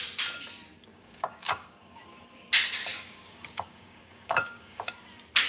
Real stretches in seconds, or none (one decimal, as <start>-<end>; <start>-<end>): 0.0-0.9; 2.0-2.9; 4.9-5.5